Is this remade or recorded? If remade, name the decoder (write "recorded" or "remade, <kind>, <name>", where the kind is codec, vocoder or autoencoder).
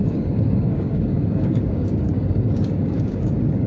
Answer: remade, codec, DAC